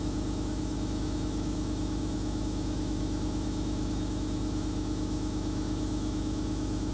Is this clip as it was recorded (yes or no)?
no